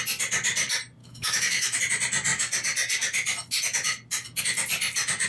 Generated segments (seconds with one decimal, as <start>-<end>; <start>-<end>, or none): 1.0-1.8